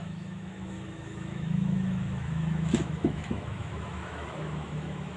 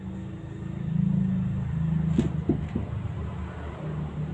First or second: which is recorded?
second